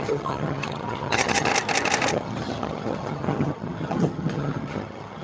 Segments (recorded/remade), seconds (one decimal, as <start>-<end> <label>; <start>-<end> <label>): 0.0-1.5 remade; 1.5-2.1 recorded; 2.1-5.2 remade